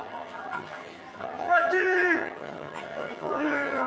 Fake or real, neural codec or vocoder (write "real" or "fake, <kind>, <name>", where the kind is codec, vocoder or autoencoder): fake, vocoder, HiFi-GAN